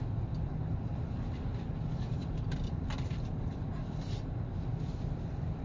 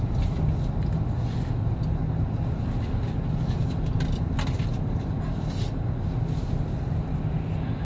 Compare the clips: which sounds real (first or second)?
second